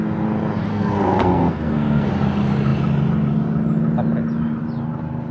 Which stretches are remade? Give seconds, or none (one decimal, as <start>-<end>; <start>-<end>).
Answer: 0.7-2.1